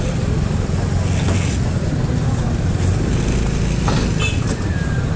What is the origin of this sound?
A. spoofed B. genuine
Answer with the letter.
B